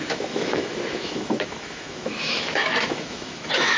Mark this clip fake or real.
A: fake